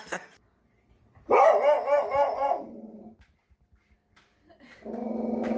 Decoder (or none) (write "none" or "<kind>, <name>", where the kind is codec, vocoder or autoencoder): none